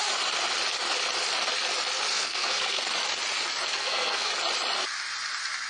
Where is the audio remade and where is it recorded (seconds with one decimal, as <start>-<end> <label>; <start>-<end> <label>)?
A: 0.0-2.1 recorded; 2.1-2.8 remade; 2.8-3.7 recorded; 3.7-4.3 remade; 4.3-5.7 recorded